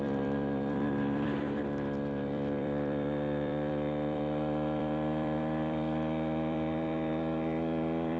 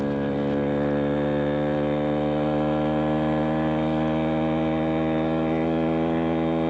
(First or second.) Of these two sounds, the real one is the second